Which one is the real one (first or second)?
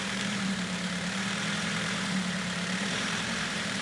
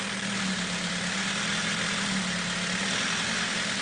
second